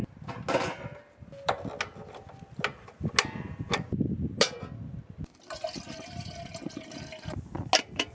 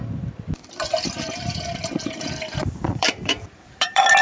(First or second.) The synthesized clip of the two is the second